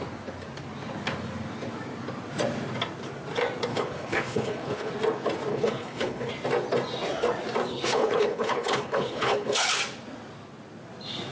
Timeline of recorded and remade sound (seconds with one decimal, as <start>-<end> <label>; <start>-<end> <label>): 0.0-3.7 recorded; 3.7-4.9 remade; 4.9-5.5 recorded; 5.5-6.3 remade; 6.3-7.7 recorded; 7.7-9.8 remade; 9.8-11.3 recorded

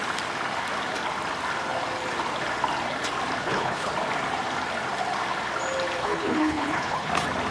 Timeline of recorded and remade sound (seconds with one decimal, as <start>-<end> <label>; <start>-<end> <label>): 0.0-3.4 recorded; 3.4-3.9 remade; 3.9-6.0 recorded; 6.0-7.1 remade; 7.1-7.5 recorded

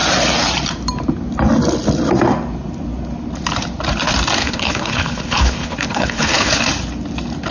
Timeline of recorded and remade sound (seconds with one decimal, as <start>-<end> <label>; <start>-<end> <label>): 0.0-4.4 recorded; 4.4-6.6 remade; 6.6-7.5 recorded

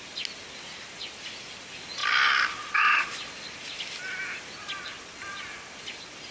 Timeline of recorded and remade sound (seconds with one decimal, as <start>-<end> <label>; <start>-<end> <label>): 0.0-6.3 recorded

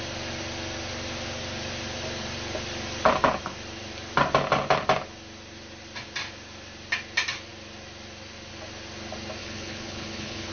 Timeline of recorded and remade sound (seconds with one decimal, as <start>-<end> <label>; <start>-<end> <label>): 0.0-9.4 recorded; 9.4-10.5 remade

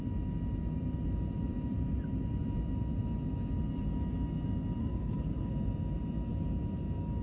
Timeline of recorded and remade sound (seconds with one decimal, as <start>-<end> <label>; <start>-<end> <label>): 0.0-4.8 recorded; 4.8-5.5 remade; 5.5-7.2 recorded

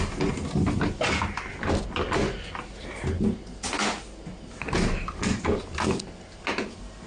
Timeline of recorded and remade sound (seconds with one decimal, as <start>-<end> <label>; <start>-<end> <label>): 0.0-7.1 recorded